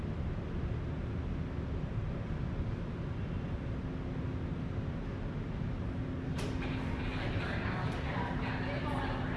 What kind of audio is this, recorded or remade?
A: recorded